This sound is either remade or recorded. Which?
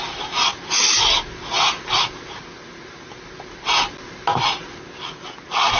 recorded